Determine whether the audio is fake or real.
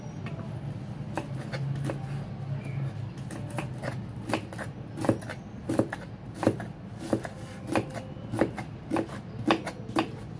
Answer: real